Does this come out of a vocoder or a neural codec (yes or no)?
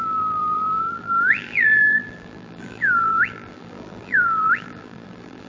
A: yes